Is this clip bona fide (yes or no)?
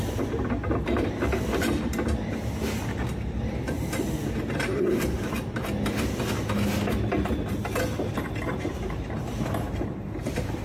yes